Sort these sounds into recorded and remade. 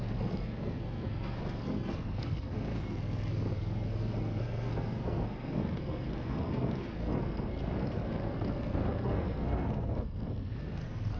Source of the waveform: remade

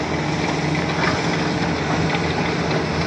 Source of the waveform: recorded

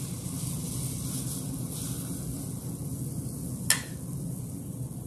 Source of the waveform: recorded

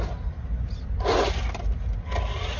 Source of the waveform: recorded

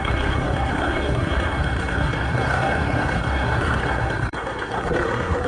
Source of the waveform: remade